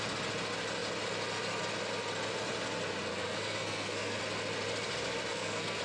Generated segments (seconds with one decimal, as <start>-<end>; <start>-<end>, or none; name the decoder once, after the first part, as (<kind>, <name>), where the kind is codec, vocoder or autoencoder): 3.1-4.2 (codec, SNAC); 5.3-5.8